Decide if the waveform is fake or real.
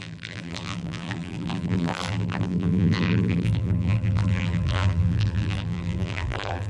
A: fake